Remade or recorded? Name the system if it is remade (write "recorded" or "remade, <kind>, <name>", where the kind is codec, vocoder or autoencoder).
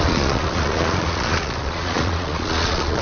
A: remade, vocoder, Vocos